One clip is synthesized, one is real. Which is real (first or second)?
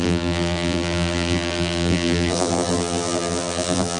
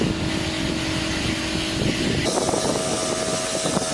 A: second